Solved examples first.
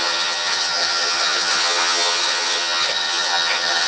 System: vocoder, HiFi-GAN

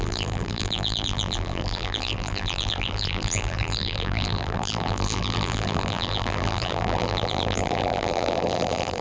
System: vocoder, BigVGAN v2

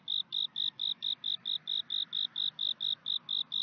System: none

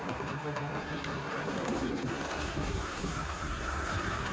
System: codec, SNAC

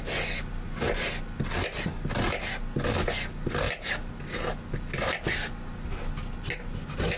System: none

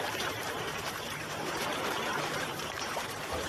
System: vocoder, BigVGAN v2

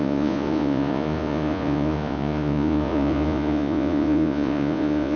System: vocoder, Vocos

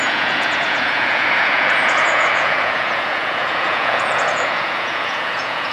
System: vocoder, Vocos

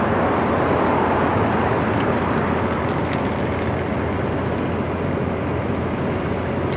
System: none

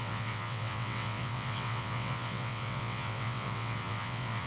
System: vocoder, WaveNeXt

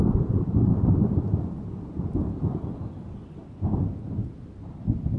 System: none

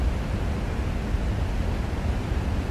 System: none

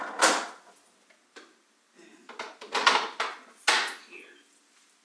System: none